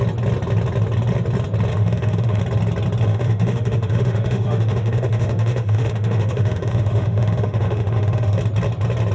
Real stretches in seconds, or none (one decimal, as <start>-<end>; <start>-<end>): 0.0-1.7; 2.4-3.1; 8.4-9.1